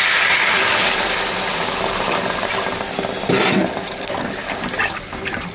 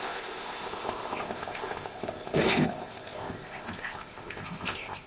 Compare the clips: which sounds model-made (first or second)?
second